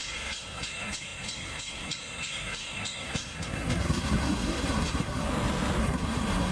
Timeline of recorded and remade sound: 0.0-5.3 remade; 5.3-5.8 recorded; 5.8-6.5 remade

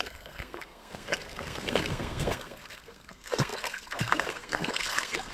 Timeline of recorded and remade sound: 0.0-5.3 remade

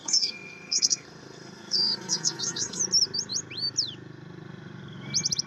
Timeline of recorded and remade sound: 0.0-2.8 remade; 2.8-5.5 recorded